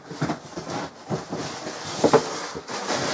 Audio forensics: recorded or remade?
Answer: recorded